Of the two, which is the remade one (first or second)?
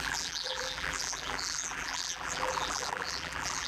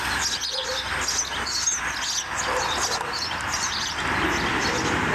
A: first